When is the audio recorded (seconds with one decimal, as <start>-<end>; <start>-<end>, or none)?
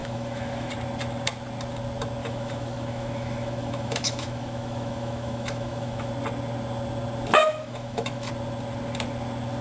0.7-2.2; 6.1-7.4; 8.3-9.6